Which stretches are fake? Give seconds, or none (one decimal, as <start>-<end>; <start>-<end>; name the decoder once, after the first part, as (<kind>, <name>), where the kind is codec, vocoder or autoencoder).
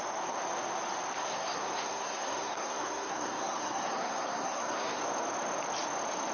1.2-5.0 (codec, SNAC)